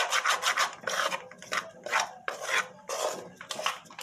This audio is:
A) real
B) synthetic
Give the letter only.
A